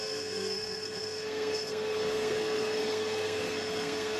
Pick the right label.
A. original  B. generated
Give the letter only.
B